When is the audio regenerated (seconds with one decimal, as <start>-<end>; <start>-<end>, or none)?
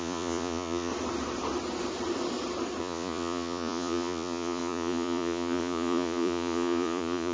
0.0-0.9; 2.8-7.3